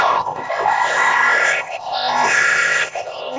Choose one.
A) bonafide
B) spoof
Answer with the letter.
B